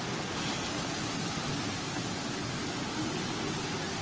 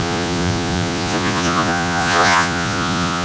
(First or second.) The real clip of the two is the first